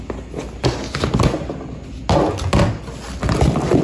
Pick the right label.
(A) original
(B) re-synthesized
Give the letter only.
A